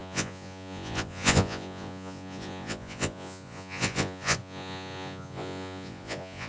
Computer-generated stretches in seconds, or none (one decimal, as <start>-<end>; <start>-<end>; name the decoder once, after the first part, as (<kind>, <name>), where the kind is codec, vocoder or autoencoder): 0.0-6.5 (vocoder, Vocos)